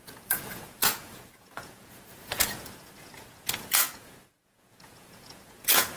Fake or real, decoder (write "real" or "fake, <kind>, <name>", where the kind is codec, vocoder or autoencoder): fake, vocoder, Vocos